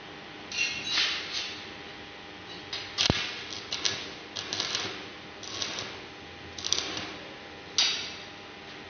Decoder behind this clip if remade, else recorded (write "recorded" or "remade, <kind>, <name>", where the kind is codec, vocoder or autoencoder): recorded